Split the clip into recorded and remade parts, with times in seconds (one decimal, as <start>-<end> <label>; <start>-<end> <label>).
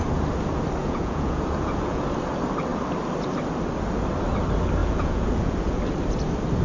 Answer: 0.0-0.8 recorded; 0.8-2.0 remade; 2.0-4.8 recorded; 4.8-5.8 remade; 5.8-6.6 recorded